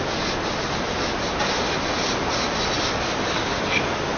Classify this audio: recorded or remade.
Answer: recorded